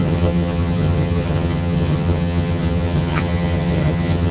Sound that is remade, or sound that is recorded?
remade